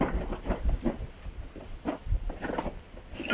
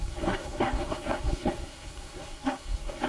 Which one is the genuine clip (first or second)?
first